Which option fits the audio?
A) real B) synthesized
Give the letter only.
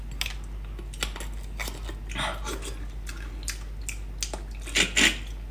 A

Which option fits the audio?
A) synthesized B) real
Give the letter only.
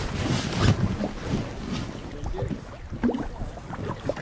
B